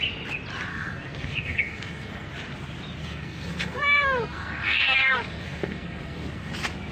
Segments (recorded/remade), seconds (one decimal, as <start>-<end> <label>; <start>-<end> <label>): 0.0-0.7 recorded; 0.7-2.3 remade; 2.3-3.0 recorded; 3.0-6.5 remade; 6.5-6.9 recorded